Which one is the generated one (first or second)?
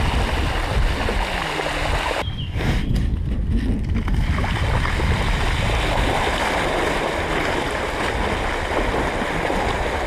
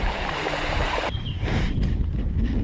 second